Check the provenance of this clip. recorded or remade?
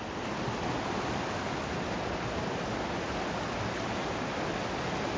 recorded